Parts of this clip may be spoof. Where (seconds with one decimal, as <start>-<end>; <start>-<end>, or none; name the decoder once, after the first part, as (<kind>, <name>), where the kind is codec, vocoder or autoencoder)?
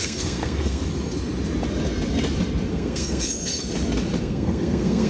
0.0-0.8 (codec, SNAC); 2.7-3.5; 4.2-5.1